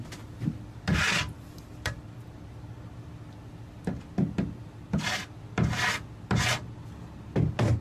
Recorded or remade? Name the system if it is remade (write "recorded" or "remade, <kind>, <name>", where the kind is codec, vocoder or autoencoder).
recorded